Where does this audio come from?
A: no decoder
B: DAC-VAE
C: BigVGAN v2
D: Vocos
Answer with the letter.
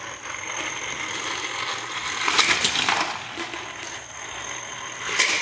A